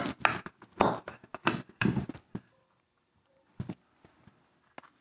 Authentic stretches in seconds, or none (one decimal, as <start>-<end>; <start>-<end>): 0.0-1.3; 4.3-5.0